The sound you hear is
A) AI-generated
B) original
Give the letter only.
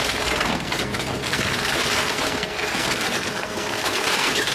A